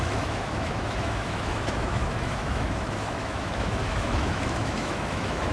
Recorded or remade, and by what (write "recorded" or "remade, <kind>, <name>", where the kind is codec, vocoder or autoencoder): remade, autoencoder, DAC-VAE